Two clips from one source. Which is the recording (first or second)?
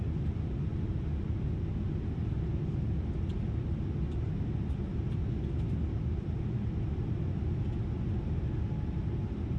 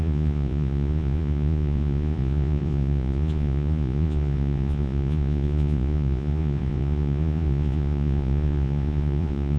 first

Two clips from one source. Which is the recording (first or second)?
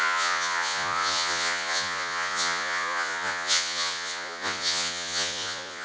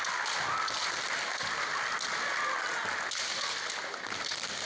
second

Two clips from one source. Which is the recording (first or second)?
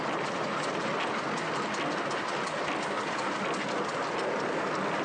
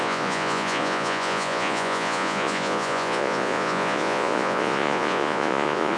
first